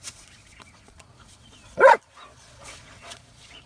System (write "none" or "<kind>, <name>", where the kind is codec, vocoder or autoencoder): vocoder, Vocos